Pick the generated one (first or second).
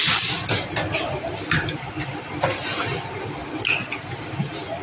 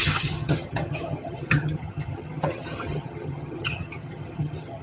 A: second